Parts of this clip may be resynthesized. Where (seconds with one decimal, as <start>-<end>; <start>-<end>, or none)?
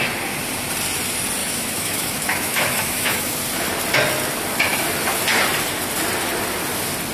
1.4-3.4